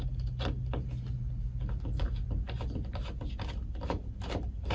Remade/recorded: recorded